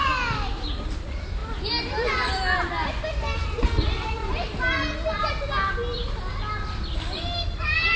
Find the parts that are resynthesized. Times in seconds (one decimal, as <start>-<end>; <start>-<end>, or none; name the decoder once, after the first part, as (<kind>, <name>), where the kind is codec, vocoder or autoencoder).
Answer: none